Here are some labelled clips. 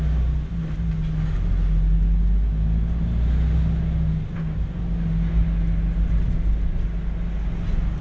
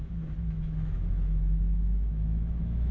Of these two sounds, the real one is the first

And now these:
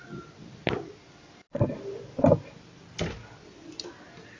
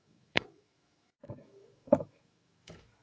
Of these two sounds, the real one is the first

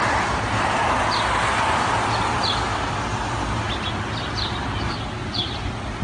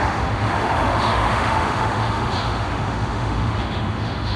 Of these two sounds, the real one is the first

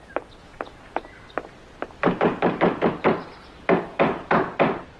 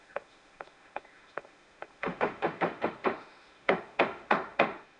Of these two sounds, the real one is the first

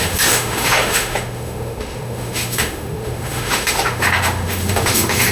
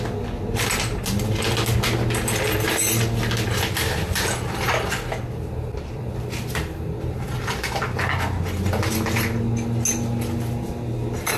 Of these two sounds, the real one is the second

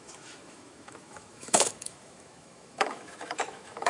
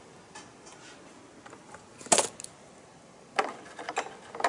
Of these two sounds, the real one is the second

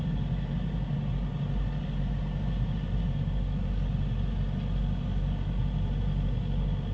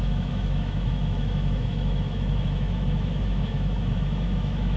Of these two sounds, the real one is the first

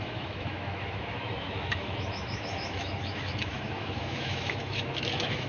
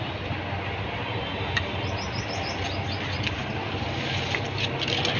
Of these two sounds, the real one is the second